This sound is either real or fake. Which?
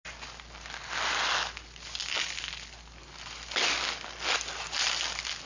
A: real